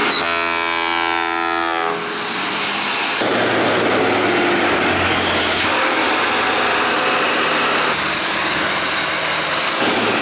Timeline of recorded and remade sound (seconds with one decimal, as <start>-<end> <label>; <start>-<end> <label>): 0.0-4.7 recorded; 4.7-6.0 remade; 6.0-8.2 recorded; 8.2-8.7 remade; 8.7-9.6 recorded; 9.6-10.2 remade